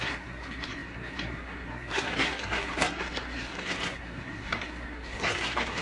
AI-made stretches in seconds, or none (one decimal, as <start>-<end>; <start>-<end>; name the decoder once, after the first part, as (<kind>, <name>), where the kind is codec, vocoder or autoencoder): 0.0-5.8 (codec, SNAC)